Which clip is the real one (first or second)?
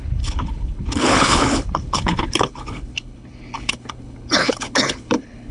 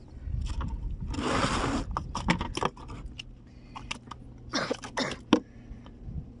second